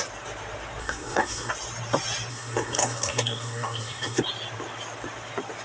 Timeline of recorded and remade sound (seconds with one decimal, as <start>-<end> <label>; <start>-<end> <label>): 0.0-0.8 recorded; 0.8-1.5 remade; 1.5-2.3 recorded; 2.3-4.2 remade; 4.2-5.6 recorded